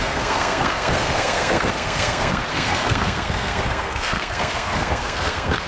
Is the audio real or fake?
fake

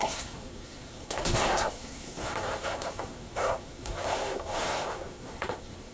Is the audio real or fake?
fake